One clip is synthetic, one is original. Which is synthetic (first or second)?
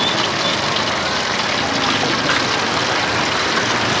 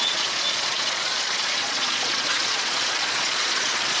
second